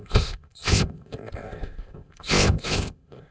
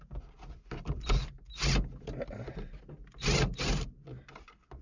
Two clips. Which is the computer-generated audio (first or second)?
first